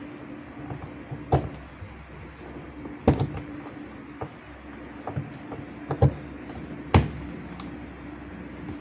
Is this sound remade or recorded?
recorded